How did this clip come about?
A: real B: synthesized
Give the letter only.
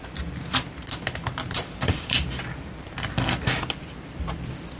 B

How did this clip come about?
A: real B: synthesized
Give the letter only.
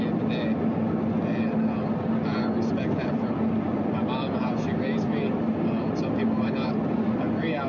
A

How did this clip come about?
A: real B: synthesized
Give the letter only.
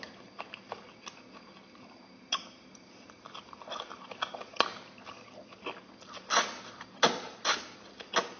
A